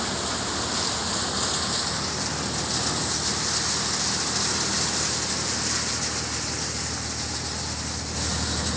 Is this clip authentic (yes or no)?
yes